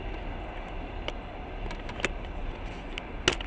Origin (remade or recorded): recorded